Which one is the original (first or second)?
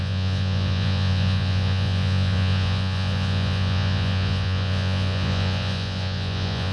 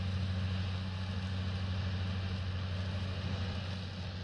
second